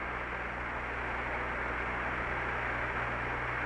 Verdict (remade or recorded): recorded